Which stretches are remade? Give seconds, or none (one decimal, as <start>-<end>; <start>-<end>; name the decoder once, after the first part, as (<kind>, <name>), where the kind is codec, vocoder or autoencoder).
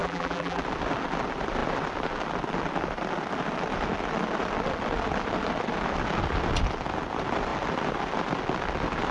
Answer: 0.0-0.6 (vocoder, BigVGAN v2)